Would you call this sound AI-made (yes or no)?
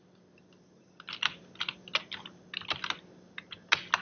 no